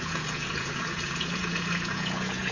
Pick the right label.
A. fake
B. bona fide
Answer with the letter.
A